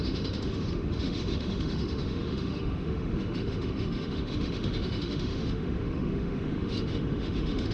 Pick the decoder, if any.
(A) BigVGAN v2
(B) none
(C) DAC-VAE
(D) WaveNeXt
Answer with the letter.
C